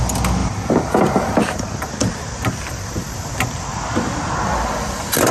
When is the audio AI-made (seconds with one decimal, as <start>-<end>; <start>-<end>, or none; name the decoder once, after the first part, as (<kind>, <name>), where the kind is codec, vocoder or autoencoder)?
0.4-3.6 (vocoder, BigVGAN v2)